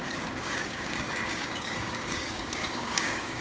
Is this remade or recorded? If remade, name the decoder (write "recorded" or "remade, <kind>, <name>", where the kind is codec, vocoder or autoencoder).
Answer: remade, codec, DAC